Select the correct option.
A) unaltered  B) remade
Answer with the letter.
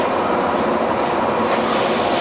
A